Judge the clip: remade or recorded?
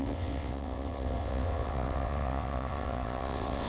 remade